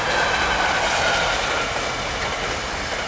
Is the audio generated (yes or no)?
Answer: no